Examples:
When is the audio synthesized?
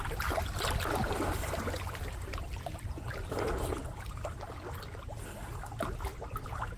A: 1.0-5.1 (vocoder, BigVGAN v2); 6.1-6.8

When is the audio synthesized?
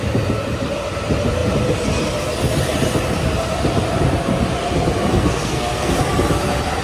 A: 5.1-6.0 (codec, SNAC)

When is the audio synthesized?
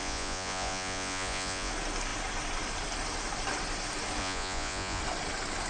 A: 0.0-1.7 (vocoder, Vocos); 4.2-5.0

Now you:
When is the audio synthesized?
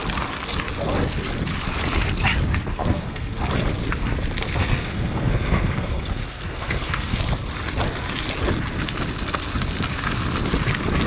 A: 2.7-3.4 (codec, SNAC); 4.6-7.2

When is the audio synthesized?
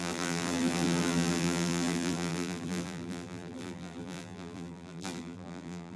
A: 0.0-6.0 (vocoder, BigVGAN v2)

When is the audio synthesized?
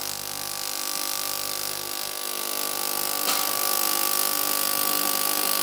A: none